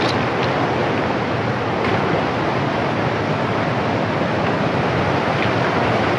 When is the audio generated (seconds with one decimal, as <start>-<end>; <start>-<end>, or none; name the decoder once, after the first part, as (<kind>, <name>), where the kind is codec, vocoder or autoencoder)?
none